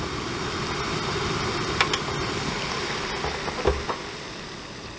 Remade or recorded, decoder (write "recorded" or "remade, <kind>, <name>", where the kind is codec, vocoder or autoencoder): recorded